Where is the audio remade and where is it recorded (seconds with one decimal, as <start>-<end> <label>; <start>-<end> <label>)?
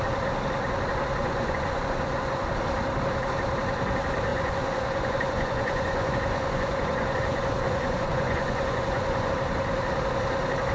0.0-1.2 recorded; 1.2-2.5 remade; 2.5-4.3 recorded; 4.3-9.3 remade; 9.3-10.7 recorded